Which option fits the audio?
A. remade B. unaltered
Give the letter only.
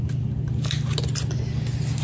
B